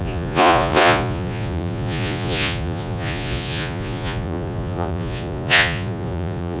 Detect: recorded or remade remade